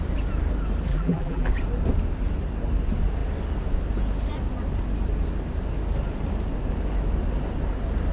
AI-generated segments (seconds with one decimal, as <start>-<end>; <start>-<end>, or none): 0.9-1.5